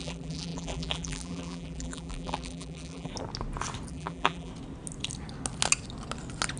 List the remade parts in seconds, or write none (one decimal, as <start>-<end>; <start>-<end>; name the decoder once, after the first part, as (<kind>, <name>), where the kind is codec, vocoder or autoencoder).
0.0-3.1 (vocoder, BigVGAN v2); 3.9-4.5